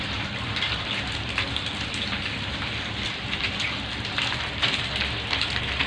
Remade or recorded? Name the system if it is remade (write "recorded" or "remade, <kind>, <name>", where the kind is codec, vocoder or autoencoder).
recorded